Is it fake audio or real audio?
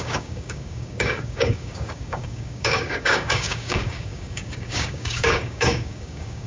fake